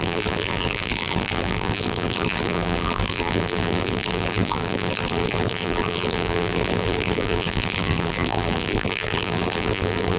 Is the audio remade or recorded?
remade